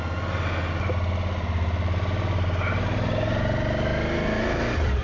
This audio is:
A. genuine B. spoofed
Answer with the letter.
A